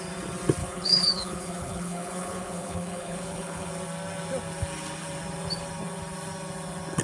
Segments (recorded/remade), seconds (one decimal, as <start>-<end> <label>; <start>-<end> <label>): 0.0-0.6 recorded; 0.6-3.7 remade; 3.7-7.0 recorded